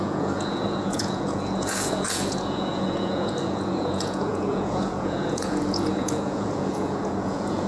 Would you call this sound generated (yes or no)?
yes